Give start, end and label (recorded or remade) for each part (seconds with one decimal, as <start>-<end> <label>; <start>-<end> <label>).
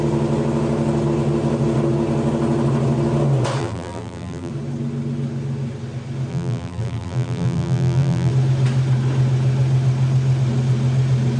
0.0-3.6 recorded; 3.6-4.5 remade; 4.5-6.3 recorded; 6.3-8.3 remade; 8.3-11.4 recorded